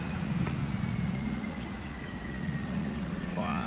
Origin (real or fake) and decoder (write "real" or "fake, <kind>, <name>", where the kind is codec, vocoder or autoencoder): fake, vocoder, Vocos